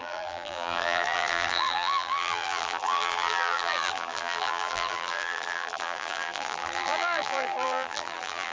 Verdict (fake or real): fake